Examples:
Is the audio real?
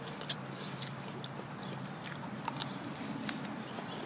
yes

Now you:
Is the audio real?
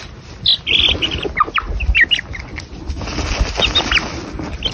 yes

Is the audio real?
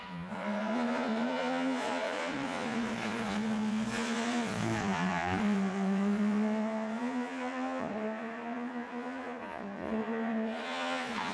no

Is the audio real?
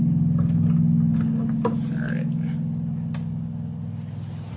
yes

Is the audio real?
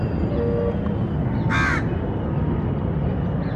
yes